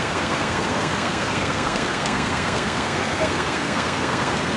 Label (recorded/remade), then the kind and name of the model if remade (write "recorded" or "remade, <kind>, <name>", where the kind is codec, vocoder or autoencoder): remade, codec, SNAC